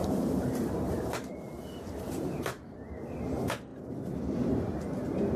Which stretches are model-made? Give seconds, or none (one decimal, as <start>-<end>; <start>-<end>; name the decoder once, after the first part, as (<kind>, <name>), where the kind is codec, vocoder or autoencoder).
0.0-3.2 (vocoder, BigVGAN v2)